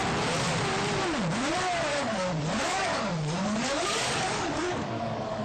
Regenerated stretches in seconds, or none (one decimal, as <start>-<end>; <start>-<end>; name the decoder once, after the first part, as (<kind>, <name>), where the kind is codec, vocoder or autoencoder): 1.9-5.4 (codec, DAC)